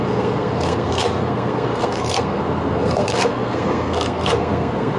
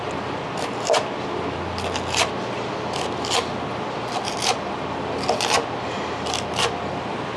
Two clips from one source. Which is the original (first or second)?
second